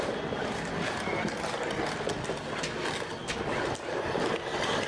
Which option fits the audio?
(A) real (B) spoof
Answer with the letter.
A